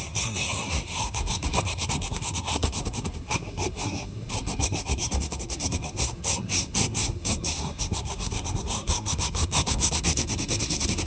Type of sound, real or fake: fake